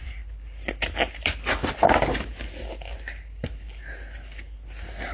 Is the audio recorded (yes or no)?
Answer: yes